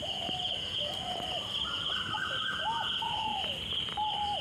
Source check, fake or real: real